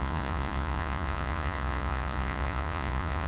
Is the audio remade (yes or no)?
yes